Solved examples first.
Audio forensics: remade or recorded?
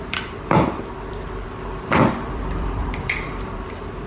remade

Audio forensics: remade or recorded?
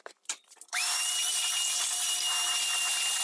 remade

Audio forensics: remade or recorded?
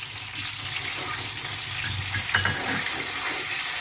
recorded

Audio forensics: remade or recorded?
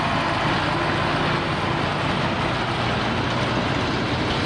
recorded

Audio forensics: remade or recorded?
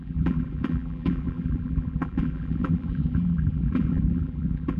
remade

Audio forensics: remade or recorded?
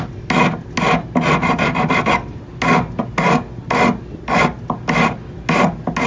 recorded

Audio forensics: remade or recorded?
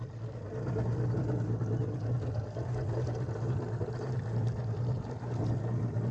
recorded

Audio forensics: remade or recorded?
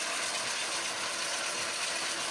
recorded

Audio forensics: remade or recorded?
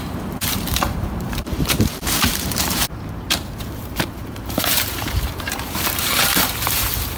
remade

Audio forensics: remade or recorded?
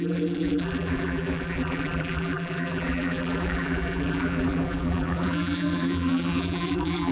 remade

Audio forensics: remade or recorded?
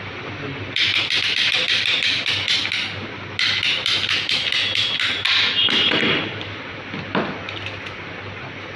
recorded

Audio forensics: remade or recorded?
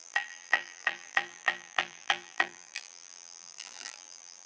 remade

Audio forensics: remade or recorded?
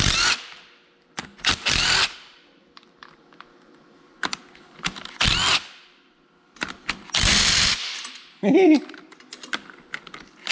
remade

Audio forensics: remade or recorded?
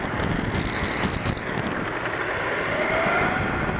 recorded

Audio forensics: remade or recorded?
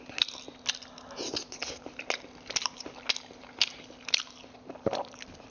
recorded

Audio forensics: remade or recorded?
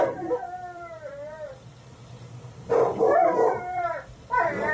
remade